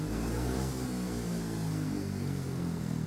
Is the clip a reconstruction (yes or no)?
yes